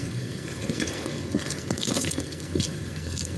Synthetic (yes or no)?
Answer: yes